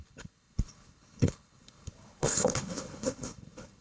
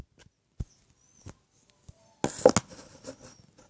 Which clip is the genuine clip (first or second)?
second